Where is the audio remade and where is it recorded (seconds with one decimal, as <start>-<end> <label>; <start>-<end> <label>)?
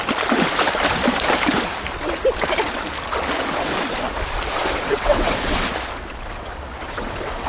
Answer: 0.0-4.5 recorded; 4.5-5.7 remade; 5.7-6.4 recorded; 6.4-7.5 remade